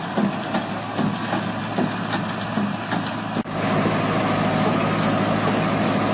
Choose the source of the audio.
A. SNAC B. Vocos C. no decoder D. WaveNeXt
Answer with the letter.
C